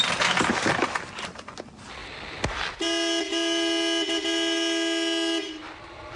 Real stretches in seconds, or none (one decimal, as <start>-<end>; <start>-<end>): 0.0-6.2